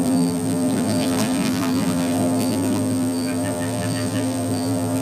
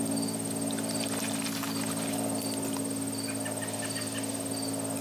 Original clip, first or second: second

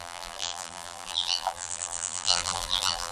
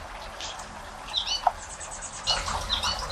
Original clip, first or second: second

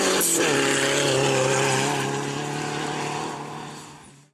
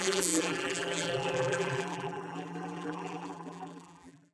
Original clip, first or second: first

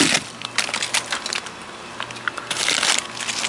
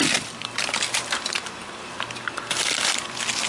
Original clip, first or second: first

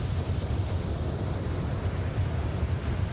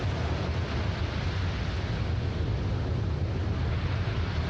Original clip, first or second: second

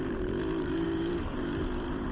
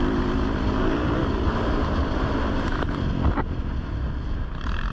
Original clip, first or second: second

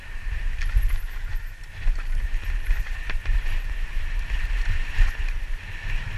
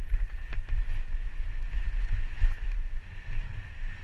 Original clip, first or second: second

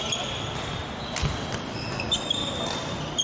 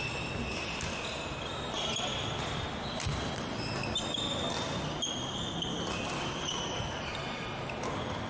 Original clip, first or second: second